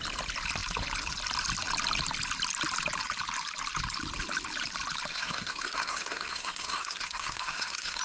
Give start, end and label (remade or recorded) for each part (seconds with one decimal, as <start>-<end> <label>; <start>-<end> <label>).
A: 0.0-5.1 recorded; 5.1-8.0 remade